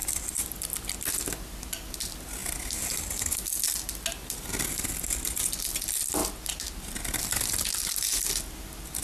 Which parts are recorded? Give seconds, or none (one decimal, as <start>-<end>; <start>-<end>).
0.0-9.0